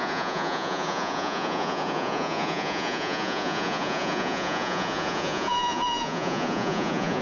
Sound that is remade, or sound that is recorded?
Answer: remade